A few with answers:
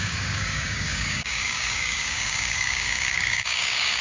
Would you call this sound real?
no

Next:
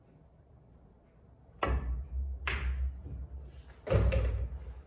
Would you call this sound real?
yes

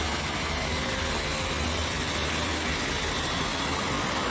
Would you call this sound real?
yes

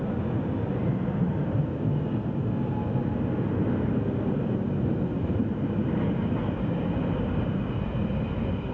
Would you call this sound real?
yes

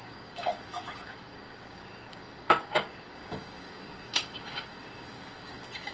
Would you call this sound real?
no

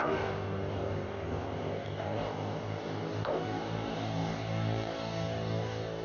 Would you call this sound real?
no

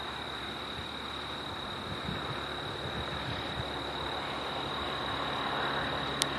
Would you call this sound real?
yes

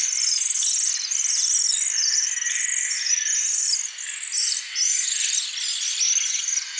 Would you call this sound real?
yes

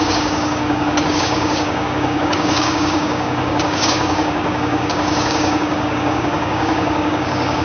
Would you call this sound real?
no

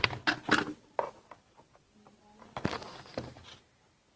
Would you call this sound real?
yes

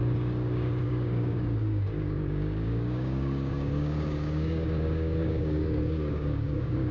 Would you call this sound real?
no